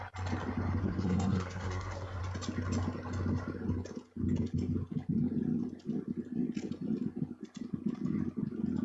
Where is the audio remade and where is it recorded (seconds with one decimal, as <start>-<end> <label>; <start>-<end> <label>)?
0.0-0.8 recorded; 0.8-2.2 remade; 2.2-8.8 recorded

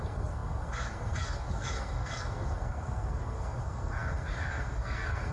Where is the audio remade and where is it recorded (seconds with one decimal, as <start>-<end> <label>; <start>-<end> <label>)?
0.0-5.3 remade